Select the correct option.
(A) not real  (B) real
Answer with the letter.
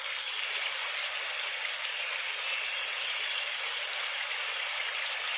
B